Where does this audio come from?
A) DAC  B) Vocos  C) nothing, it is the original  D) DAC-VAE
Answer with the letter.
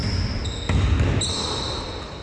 C